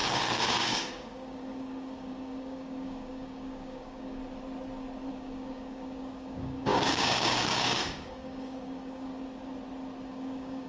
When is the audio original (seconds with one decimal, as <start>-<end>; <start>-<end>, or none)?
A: 4.2-5.1; 9.1-10.1